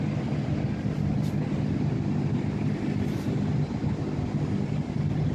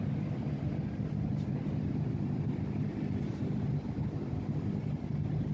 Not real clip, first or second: second